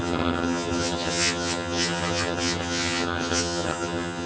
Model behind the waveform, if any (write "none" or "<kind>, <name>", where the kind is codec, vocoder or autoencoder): vocoder, HiFi-GAN